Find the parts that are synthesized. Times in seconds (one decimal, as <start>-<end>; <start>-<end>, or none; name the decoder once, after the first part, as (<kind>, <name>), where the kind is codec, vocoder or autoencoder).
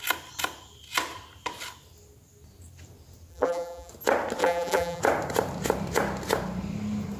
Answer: 3.3-3.9 (vocoder, BigVGAN v2); 4.4-5.0